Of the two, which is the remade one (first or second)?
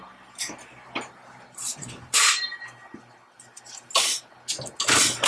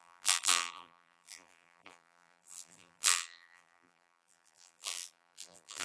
second